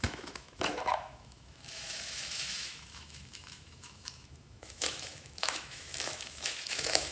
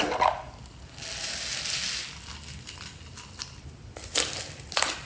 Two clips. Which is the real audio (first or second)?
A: second